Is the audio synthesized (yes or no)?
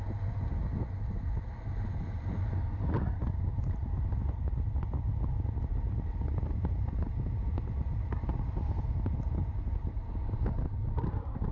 no